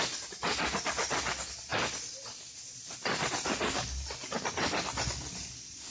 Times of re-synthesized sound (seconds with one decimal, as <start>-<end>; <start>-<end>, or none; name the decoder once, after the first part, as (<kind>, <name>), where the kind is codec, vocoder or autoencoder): none